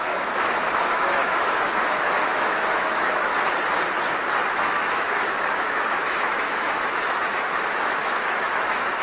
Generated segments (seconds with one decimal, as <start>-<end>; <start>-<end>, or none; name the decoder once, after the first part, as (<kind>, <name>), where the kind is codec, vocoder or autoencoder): 0.0-3.3 (autoencoder, DAC-VAE); 4.5-9.0